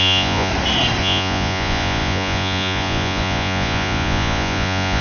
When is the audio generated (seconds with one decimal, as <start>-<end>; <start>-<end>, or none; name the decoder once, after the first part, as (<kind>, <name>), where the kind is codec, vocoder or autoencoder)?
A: 0.0-0.5 (vocoder, Vocos); 1.0-5.0